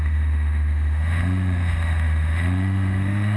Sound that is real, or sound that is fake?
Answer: fake